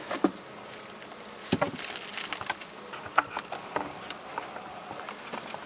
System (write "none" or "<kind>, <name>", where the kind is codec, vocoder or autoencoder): none